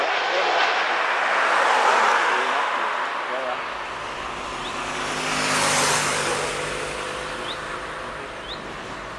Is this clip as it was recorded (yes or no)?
yes